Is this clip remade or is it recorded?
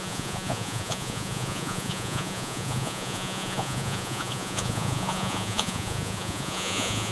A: remade